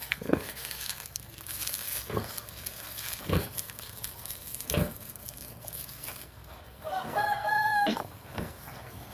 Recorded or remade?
remade